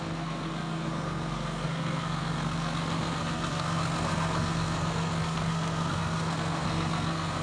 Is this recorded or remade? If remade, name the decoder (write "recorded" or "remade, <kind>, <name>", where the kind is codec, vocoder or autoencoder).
remade, codec, SNAC